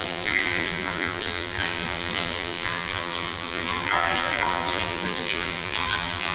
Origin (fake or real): fake